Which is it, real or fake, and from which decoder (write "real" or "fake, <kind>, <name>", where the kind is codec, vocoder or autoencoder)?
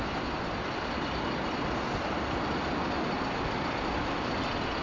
real